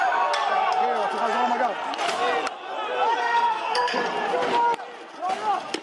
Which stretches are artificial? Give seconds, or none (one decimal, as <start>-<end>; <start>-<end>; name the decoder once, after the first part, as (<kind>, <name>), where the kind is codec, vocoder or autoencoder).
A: 3.2-4.0 (codec, SNAC)